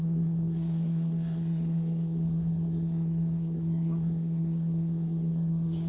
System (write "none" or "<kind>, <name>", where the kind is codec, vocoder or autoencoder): codec, SNAC